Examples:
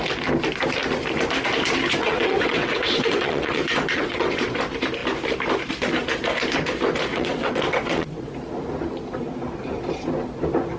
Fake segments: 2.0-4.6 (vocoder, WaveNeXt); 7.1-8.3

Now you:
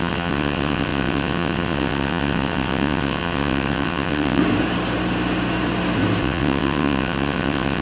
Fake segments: 0.0-4.4 (vocoder, WaveNeXt); 6.2-7.8

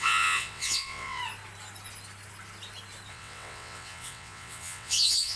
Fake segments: 0.0-1.2 (vocoder, WaveNeXt); 3.1-5.4

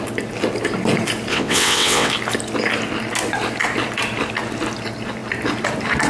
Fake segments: 1.3-2.1 (vocoder, WaveNeXt)